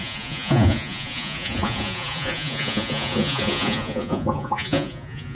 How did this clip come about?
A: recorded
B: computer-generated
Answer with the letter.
B